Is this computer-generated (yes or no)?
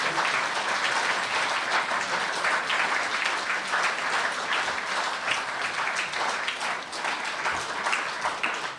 no